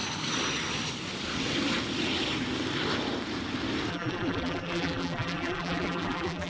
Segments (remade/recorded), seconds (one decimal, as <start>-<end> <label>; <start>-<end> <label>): 0.0-3.9 recorded; 3.9-6.5 remade